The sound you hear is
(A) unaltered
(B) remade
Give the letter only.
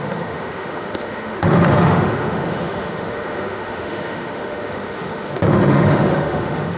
B